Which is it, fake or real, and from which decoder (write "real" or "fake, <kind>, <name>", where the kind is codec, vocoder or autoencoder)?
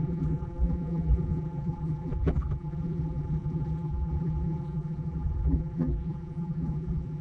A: fake, vocoder, BigVGAN v2